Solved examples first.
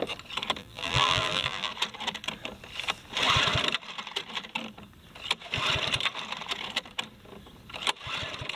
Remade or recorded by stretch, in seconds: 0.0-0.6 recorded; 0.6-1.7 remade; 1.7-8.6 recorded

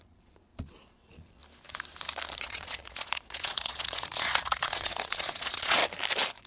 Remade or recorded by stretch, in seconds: 0.0-1.4 remade; 1.4-2.4 recorded; 2.4-5.8 remade; 5.8-6.5 recorded

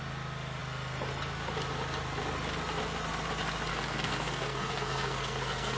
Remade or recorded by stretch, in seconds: 0.0-3.7 recorded; 3.7-5.8 remade

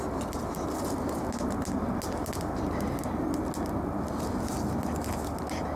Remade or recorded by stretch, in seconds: 0.0-5.8 recorded